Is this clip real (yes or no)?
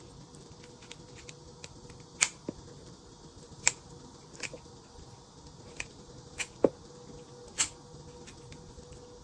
yes